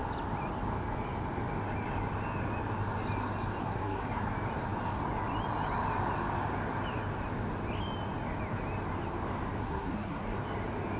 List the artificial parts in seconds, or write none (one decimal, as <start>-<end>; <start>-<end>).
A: 3.6-4.2; 9.6-10.4